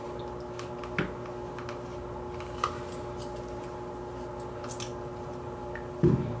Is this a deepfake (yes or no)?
no